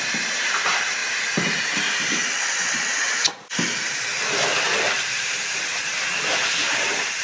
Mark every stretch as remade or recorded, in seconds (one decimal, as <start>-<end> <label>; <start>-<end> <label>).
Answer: 0.0-1.0 remade; 1.0-1.6 recorded; 1.6-2.2 remade; 2.2-5.0 recorded; 5.0-7.2 remade